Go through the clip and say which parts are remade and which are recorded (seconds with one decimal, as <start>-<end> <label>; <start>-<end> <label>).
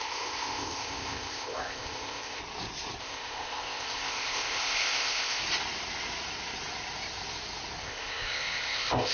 0.0-2.4 remade; 2.4-3.0 recorded; 3.0-5.4 remade; 5.4-7.8 recorded; 7.8-9.1 remade